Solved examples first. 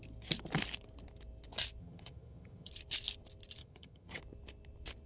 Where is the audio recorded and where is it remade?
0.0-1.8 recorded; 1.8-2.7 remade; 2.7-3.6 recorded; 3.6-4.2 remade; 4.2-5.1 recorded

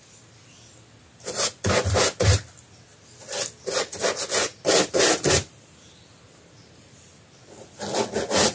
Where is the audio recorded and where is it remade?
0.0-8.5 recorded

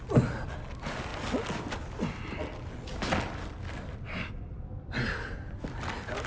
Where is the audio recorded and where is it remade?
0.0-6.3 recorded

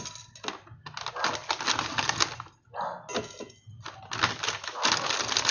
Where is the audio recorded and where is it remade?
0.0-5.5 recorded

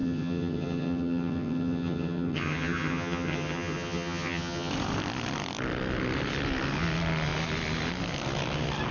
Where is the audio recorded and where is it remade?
0.0-4.7 remade; 4.7-8.9 recorded